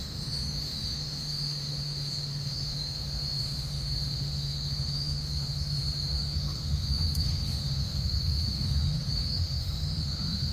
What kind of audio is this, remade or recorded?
remade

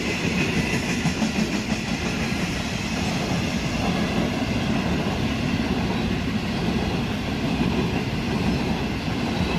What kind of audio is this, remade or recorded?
recorded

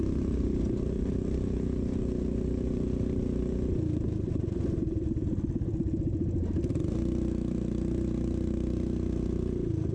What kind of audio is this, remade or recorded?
recorded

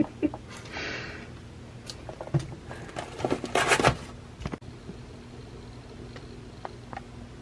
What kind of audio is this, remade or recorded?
recorded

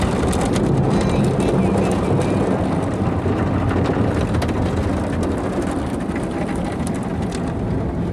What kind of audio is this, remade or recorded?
recorded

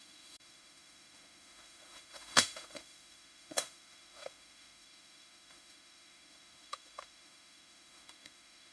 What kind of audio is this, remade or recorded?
remade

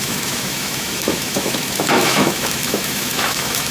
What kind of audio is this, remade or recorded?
remade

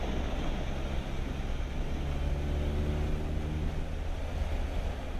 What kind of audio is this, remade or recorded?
recorded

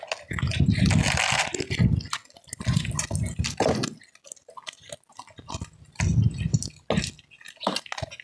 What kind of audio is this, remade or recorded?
recorded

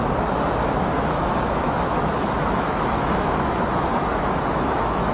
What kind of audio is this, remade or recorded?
remade